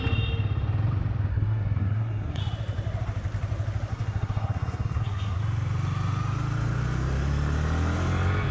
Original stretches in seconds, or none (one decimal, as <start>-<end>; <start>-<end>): 0.0-1.3; 2.4-3.9; 5.4-8.5